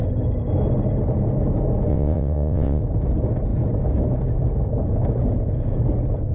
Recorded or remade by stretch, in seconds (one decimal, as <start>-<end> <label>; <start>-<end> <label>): 0.0-1.9 recorded; 1.9-2.8 remade; 2.8-6.3 recorded